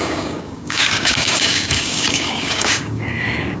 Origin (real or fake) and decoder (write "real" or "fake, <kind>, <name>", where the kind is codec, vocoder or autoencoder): fake, codec, DAC